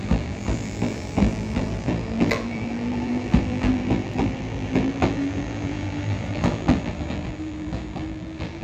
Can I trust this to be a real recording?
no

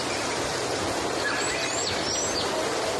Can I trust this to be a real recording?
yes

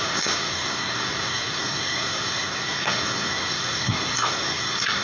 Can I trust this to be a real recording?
no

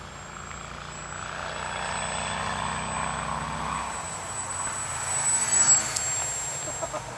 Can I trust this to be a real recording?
yes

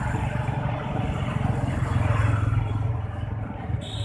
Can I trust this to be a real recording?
no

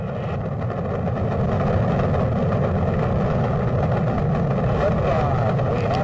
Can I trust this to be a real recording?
yes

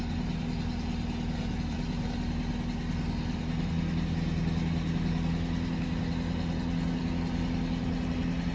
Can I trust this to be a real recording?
yes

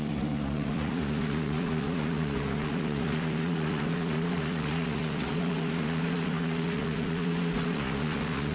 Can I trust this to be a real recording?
no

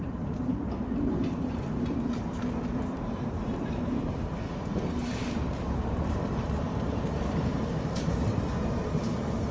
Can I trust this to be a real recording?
no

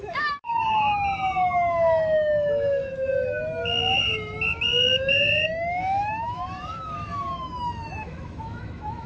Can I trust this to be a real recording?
no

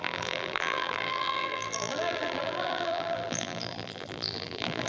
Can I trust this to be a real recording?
no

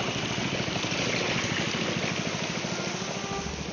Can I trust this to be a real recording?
yes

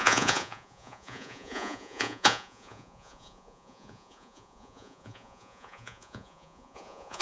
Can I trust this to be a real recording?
no